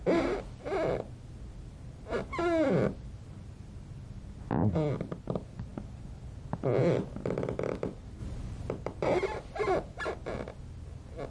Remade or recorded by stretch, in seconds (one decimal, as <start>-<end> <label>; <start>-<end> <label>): 0.0-8.2 recorded; 8.2-8.7 remade; 8.7-11.3 recorded